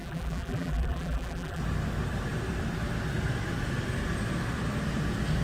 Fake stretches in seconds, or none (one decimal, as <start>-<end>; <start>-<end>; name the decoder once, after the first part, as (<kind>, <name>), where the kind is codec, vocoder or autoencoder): 0.0-1.6 (vocoder, BigVGAN v2)

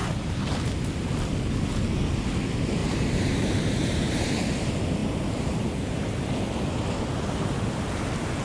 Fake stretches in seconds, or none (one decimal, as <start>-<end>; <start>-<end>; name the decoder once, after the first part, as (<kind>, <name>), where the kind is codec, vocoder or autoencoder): 2.8-4.4 (vocoder, BigVGAN v2)

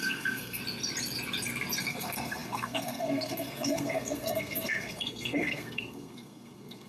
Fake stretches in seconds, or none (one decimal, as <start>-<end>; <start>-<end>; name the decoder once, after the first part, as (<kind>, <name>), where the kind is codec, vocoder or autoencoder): 0.0-0.6 (codec, SNAC); 1.8-6.9

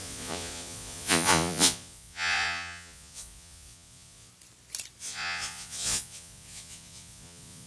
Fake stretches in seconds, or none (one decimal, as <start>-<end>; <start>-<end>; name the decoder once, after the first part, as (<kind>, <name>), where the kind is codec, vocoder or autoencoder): 0.0-4.3 (vocoder, Vocos); 5.0-7.7

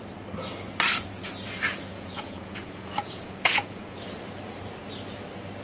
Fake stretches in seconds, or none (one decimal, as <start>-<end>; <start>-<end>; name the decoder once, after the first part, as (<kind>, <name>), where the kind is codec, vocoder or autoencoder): 1.9-4.0 (vocoder, Vocos)

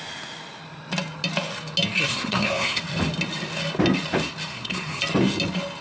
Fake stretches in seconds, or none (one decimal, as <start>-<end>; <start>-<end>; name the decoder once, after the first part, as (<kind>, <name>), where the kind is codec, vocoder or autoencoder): 2.1-2.8 (codec, SNAC); 4.5-5.0

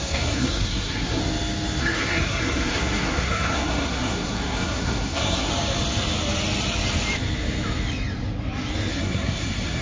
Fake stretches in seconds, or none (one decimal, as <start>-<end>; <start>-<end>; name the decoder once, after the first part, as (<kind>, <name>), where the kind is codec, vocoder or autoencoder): 0.0-1.2 (codec, SNAC); 1.8-5.5; 8.9-9.8